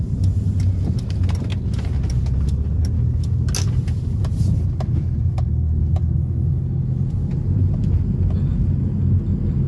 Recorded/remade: recorded